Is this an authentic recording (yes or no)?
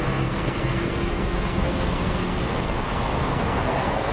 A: no